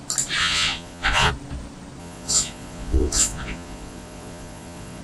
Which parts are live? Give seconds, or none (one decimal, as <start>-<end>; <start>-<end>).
0.0-0.4; 1.3-2.0